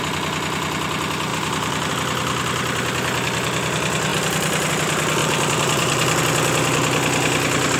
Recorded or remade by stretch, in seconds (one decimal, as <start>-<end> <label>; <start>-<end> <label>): 0.0-1.3 recorded; 1.3-1.9 remade; 1.9-5.2 recorded; 5.2-6.2 remade; 6.2-7.8 recorded